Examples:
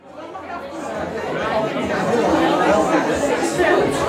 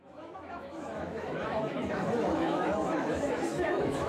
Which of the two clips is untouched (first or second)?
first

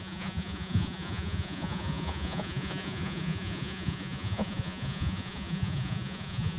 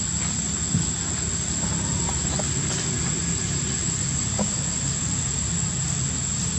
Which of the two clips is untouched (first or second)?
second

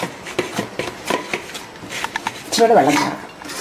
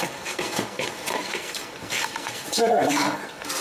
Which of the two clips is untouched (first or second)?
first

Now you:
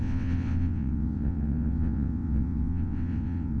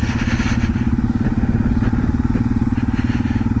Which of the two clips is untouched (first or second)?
second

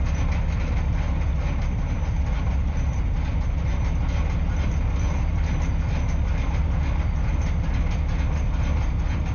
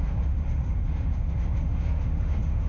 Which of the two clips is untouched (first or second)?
first